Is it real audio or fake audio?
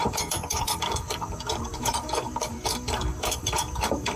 fake